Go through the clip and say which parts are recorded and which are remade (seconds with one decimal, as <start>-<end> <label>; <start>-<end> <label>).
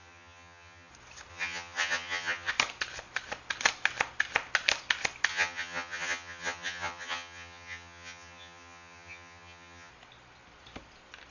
0.0-0.9 remade; 0.9-1.3 recorded; 1.3-2.5 remade; 2.5-5.3 recorded; 5.3-9.9 remade; 9.9-11.3 recorded